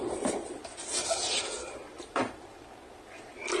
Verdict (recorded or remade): recorded